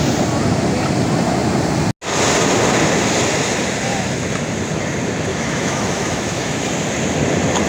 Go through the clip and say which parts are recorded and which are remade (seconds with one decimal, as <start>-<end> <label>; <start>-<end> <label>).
0.0-5.3 recorded; 5.3-6.7 remade; 6.7-7.7 recorded